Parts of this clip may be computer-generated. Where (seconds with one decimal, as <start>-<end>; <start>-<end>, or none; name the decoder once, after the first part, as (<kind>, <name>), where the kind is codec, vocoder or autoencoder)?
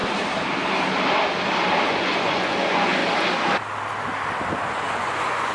1.8-3.0 (vocoder, Vocos); 4.9-5.5